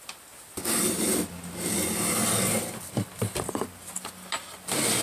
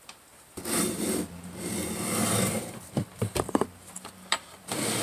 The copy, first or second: second